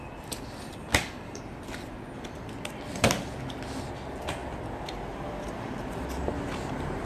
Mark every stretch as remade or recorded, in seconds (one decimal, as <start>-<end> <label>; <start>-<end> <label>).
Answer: 0.0-0.9 recorded; 0.9-1.4 remade; 1.4-7.1 recorded